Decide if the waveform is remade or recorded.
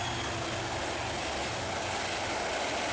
recorded